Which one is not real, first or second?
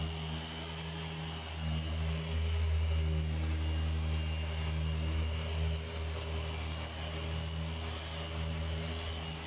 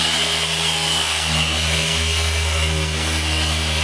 second